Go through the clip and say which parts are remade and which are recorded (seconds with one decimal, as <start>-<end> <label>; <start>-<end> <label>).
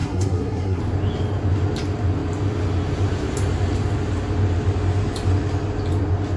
0.0-0.8 remade; 0.8-6.4 recorded